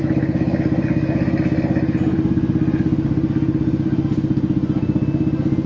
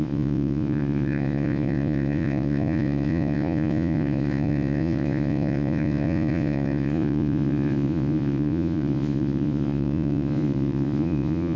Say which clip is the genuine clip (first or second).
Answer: first